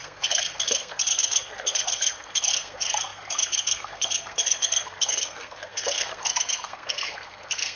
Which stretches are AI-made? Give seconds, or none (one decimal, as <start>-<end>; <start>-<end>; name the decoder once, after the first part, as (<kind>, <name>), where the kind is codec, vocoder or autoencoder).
0.0-7.8 (codec, SNAC)